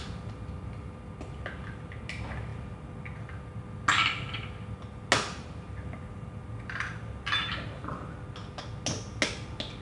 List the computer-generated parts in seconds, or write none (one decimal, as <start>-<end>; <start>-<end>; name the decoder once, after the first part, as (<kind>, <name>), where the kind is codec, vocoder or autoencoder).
none